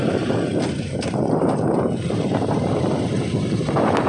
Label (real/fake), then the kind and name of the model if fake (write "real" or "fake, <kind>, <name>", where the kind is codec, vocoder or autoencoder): fake, vocoder, BigVGAN v2